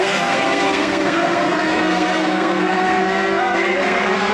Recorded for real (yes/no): no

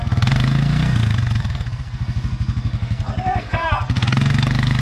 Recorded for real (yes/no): no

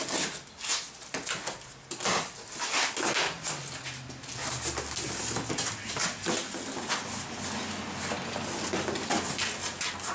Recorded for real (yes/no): yes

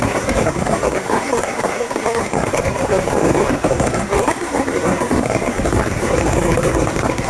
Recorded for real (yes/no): no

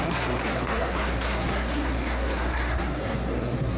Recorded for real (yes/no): no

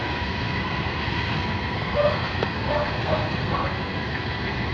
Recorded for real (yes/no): no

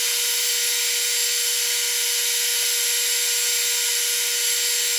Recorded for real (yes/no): yes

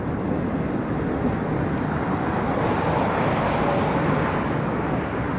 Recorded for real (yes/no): yes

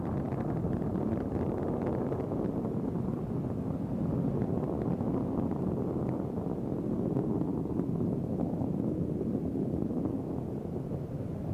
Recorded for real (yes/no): yes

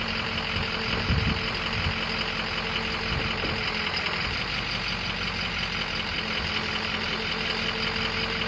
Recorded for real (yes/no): yes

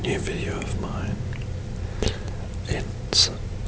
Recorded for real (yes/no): yes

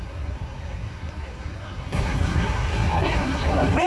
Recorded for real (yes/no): no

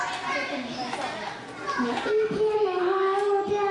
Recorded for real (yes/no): yes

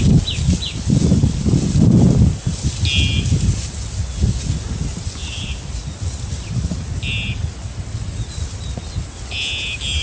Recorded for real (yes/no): yes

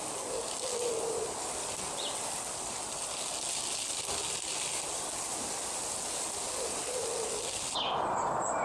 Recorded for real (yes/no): yes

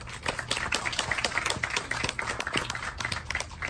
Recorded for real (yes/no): yes